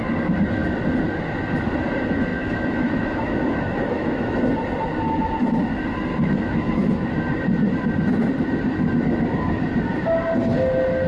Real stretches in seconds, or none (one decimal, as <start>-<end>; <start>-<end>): 0.0-2.3; 4.4-6.1; 6.9-11.1